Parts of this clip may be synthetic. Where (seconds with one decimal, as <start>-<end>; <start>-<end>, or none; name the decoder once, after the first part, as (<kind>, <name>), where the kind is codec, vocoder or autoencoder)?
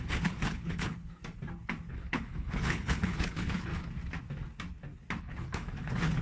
0.0-1.2 (codec, HILCodec); 1.9-3.7; 5.2-6.2